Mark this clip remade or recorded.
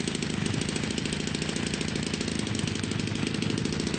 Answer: recorded